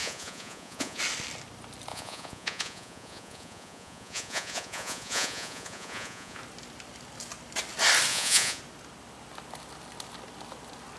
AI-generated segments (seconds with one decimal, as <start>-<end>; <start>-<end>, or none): 0.0-1.0; 1.9-6.4; 8.1-8.6